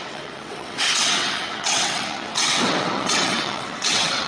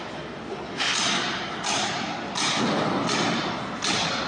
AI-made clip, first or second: first